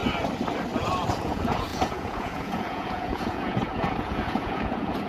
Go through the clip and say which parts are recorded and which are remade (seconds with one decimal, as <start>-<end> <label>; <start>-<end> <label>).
0.0-1.1 recorded; 1.1-5.1 remade